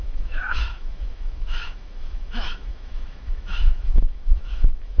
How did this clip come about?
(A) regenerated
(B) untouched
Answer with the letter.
A